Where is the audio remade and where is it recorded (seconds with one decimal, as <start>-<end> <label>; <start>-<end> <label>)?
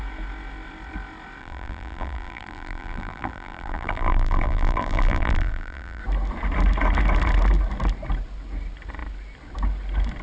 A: 0.0-1.4 recorded; 1.4-6.0 remade; 6.0-10.2 recorded